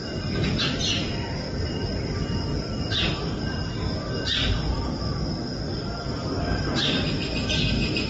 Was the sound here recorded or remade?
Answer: remade